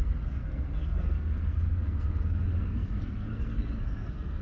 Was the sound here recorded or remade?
remade